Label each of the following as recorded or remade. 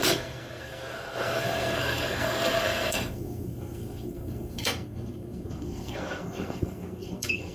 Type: remade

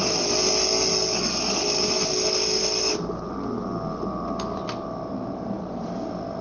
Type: recorded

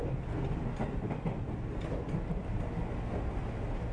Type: recorded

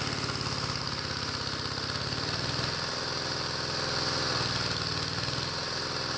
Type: recorded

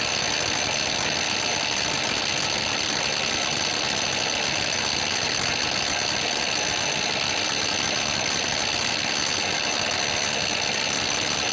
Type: recorded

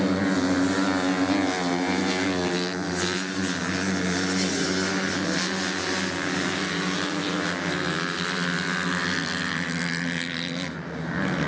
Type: recorded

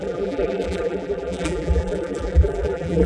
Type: remade